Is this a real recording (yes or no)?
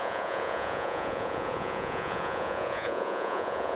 no